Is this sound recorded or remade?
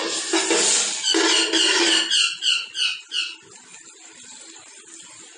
recorded